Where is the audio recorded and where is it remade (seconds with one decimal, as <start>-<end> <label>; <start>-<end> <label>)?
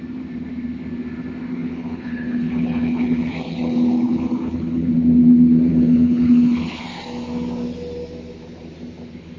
0.0-1.5 recorded; 1.5-4.9 remade; 4.9-5.7 recorded; 5.7-6.8 remade; 6.8-9.4 recorded